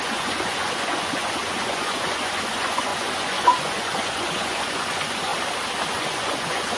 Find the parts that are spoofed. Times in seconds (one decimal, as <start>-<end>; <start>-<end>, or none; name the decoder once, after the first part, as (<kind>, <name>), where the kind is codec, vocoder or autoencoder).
0.0-5.3 (vocoder, Vocos); 5.9-6.8